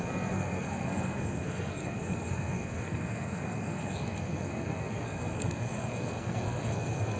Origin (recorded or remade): remade